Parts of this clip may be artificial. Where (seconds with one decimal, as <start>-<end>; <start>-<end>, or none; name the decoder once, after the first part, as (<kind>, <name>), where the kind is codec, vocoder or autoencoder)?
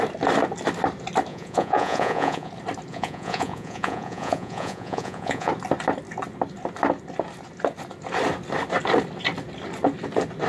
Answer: 1.3-2.5 (vocoder, Vocos); 2.9-5.5